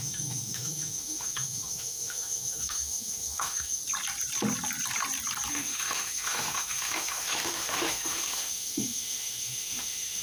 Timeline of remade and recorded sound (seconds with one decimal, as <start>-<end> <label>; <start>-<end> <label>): 0.0-3.8 remade; 3.8-5.5 recorded; 5.5-10.2 remade